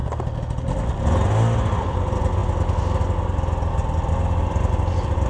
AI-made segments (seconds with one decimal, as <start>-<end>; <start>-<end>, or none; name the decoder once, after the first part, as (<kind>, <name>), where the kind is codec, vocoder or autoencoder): 1.3-2.4 (vocoder, BigVGAN v2); 4.4-5.3